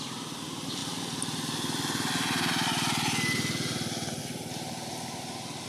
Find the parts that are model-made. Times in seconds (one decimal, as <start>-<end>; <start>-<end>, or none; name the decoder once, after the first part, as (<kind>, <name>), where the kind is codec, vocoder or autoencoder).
none